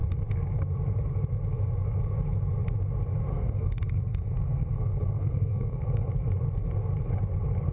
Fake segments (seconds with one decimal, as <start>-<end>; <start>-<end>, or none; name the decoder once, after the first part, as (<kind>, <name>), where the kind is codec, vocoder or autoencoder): 3.3-6.1 (codec, SNAC)